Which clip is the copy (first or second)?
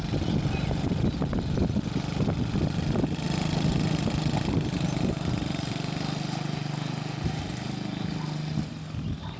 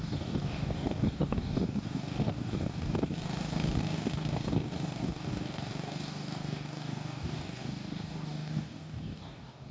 second